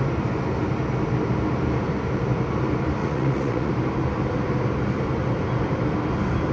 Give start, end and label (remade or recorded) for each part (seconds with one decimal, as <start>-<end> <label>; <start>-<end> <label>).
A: 0.0-3.0 recorded; 3.0-3.7 remade; 3.7-6.5 recorded